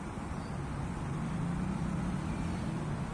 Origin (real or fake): real